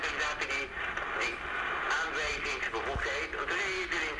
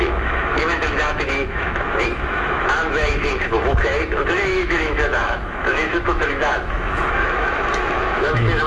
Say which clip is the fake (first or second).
second